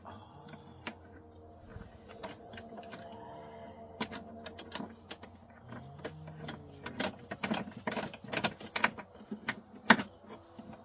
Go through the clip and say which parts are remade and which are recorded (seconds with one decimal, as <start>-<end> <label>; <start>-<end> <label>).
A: 0.0-1.7 recorded; 1.7-2.5 remade; 2.5-10.8 recorded